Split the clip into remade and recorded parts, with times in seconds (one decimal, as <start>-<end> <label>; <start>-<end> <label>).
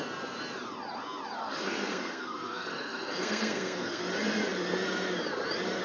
0.0-1.4 recorded; 1.4-4.0 remade; 4.0-5.8 recorded